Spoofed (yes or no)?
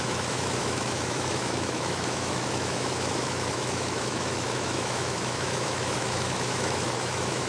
yes